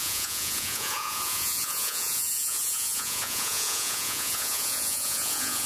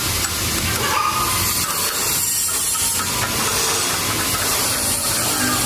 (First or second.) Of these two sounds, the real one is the second